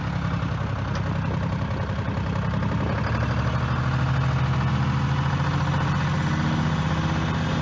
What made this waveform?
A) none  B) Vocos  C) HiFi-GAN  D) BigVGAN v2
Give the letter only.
A